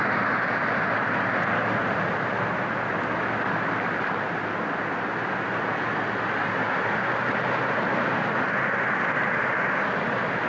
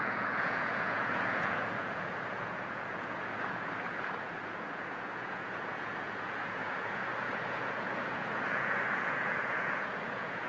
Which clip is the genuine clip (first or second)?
first